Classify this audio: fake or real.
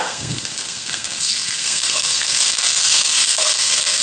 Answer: fake